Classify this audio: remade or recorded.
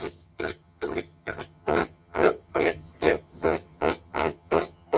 remade